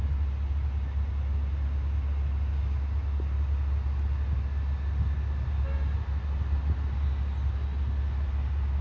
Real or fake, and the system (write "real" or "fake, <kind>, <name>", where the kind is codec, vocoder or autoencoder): real